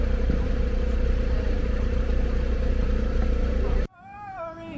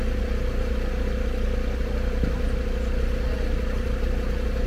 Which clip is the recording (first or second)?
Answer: second